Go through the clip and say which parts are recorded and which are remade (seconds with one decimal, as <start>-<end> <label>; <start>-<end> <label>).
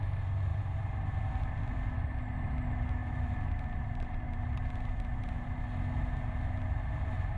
0.0-0.5 recorded; 0.5-1.2 remade; 1.2-3.0 recorded; 3.0-5.6 remade; 5.6-7.4 recorded